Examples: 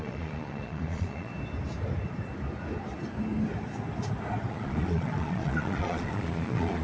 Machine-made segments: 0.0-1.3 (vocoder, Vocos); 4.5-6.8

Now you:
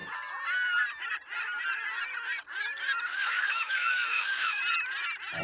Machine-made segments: 3.1-4.6 (autoencoder, DAC-VAE)

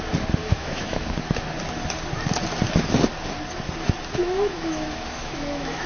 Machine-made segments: 0.4-1.2 (autoencoder, DAC-VAE); 4.2-5.9

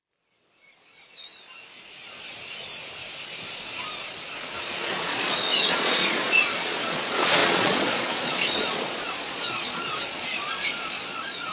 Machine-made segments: 4.6-11.5 (vocoder, Vocos)

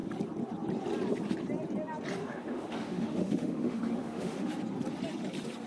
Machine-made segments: 2.2-4.5 (autoencoder, DAC-VAE)

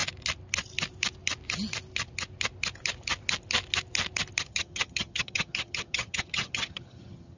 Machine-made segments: 4.4-7.4 (vocoder, HiFi-GAN)

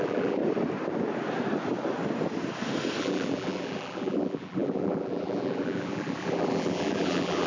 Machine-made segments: 0.0-0.4 (vocoder, BigVGAN v2); 3.0-7.5

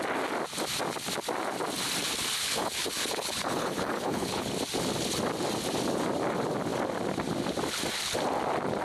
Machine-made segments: 2.4-4.5 (codec, HILCodec)